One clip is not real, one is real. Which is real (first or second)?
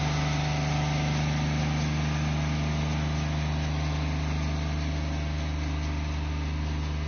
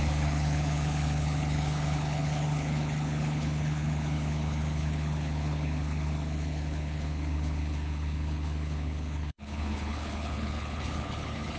first